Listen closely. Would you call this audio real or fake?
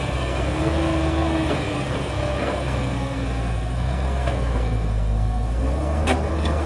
fake